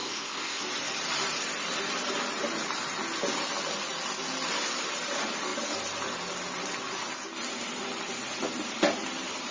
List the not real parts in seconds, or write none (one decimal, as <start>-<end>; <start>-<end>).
0.0-0.6

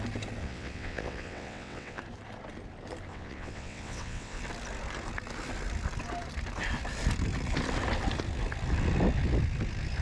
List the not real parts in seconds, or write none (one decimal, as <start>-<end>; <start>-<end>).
0.4-2.0; 3.1-4.4

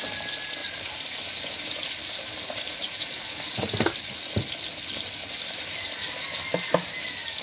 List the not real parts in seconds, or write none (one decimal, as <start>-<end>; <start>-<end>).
0.6-4.4; 5.2-6.1

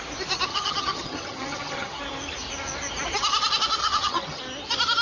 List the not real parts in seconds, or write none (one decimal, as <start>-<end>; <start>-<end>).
0.5-2.0; 3.8-4.4